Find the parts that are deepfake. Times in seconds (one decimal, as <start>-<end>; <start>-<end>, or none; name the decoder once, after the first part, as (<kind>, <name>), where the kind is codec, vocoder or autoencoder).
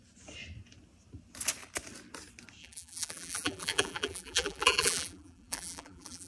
2.6-6.3 (vocoder, BigVGAN v2)